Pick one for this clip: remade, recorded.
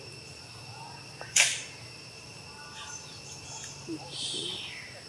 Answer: recorded